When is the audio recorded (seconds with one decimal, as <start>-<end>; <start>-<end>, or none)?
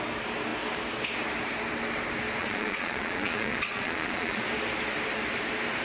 0.0-2.4; 4.4-5.8